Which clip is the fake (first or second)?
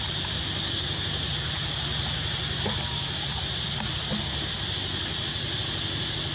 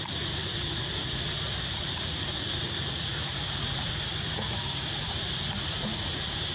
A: second